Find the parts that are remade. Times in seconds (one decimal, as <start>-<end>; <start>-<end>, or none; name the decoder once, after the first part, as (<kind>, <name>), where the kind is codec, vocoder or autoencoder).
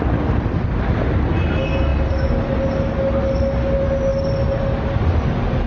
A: none